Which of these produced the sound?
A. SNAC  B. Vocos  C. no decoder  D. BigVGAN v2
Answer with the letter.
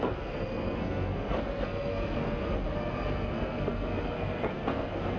A